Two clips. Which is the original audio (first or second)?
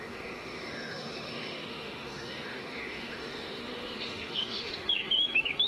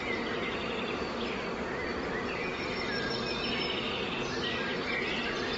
second